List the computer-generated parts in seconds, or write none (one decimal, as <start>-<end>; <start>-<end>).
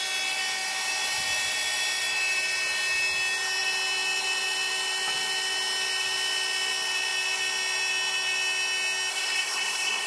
9.1-10.1